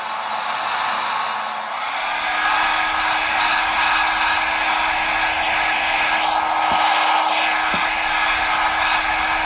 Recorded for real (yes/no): yes